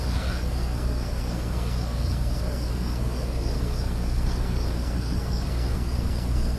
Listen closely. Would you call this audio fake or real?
fake